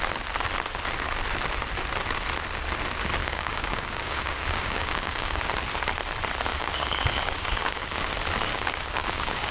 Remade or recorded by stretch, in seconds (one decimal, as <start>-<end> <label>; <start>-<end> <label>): 0.0-3.2 recorded; 3.2-5.4 remade; 5.4-6.5 recorded; 6.5-8.1 remade; 8.1-8.5 recorded; 8.5-9.5 remade